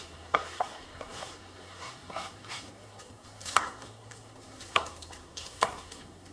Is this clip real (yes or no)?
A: no